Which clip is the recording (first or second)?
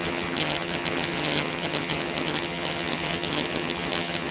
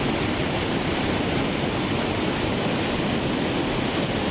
second